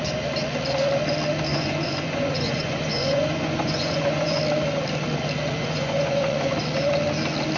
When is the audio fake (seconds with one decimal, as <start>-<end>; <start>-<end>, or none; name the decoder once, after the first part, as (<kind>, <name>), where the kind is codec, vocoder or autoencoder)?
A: 1.5-4.4 (vocoder, Vocos); 5.6-6.5